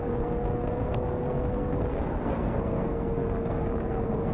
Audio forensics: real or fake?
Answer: fake